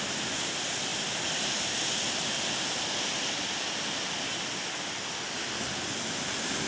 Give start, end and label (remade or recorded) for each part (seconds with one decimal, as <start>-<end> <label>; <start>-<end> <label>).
0.0-0.9 remade; 0.9-4.9 recorded; 4.9-6.7 remade